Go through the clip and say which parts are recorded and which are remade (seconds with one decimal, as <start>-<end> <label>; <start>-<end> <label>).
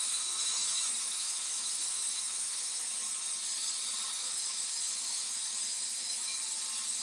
0.0-3.1 remade; 3.1-4.1 recorded; 4.1-6.3 remade; 6.3-7.0 recorded